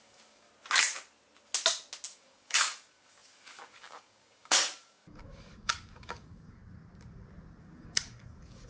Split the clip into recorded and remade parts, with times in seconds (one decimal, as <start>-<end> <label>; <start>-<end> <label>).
0.0-0.5 remade; 0.5-2.1 recorded; 2.1-6.6 remade; 6.6-7.6 recorded; 7.6-8.7 remade